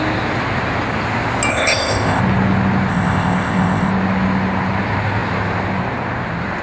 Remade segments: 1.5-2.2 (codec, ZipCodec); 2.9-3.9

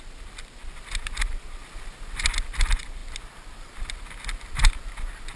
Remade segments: 1.6-2.3 (vocoder, BigVGAN v2)